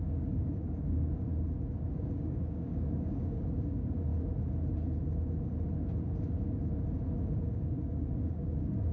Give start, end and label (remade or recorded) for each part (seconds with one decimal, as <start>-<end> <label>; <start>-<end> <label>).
0.0-1.3 remade; 1.3-1.9 recorded; 1.9-4.1 remade; 4.1-7.4 recorded; 7.4-8.9 remade